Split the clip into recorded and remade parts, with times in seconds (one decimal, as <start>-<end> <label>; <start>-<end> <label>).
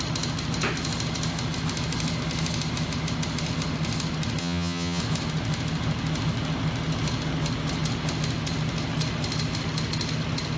0.0-4.4 recorded; 4.4-5.0 remade; 5.0-10.6 recorded